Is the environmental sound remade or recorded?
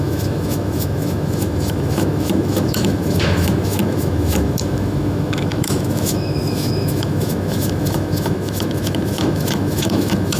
remade